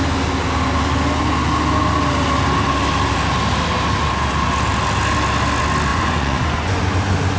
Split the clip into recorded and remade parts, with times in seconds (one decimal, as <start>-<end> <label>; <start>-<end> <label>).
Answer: 0.0-5.9 recorded; 5.9-6.8 remade; 6.8-7.4 recorded